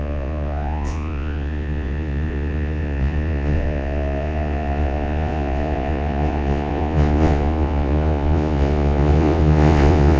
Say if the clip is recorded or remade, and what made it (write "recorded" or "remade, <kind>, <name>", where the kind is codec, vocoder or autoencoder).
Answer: remade, vocoder, Vocos